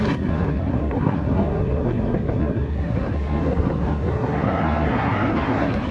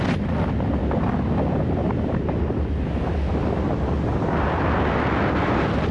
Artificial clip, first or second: first